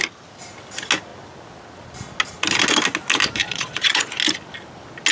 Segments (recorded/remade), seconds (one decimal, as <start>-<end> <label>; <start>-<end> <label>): 0.0-3.4 recorded; 3.4-4.1 remade; 4.1-5.1 recorded